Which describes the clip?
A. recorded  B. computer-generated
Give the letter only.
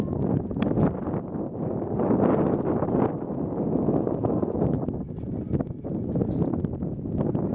A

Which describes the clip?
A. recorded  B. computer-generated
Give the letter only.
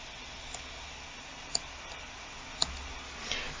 A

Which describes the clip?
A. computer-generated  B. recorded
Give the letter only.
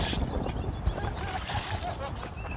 B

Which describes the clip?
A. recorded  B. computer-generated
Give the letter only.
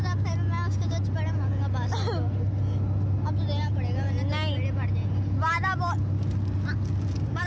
A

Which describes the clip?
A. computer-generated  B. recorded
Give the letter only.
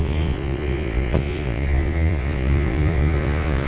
A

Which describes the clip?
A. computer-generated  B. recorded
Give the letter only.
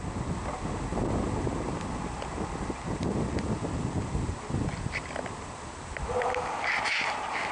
B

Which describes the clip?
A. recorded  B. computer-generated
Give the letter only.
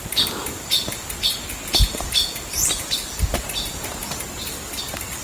A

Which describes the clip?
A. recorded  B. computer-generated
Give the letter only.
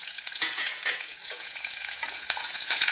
B